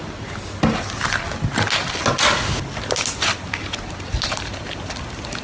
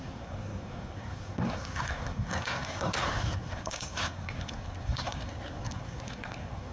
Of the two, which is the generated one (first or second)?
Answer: second